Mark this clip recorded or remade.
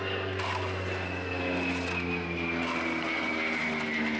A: recorded